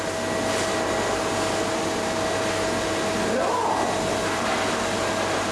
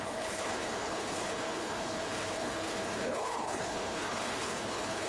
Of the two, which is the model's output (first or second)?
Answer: second